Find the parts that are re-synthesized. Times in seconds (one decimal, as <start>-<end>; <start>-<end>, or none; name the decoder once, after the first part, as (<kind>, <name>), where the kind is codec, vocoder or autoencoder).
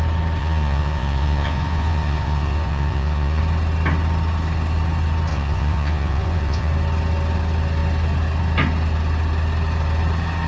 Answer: 0.4-3.4 (vocoder, Vocos); 5.3-6.7